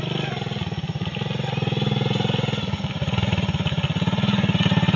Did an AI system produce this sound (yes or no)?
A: no